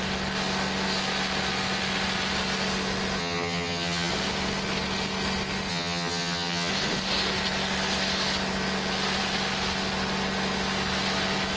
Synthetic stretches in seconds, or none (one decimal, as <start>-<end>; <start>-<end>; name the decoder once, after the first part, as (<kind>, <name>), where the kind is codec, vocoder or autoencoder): 3.2-4.1 (vocoder, HiFi-GAN); 5.7-6.7